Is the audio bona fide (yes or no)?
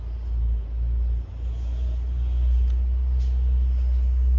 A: yes